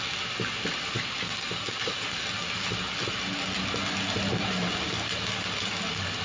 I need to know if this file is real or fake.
real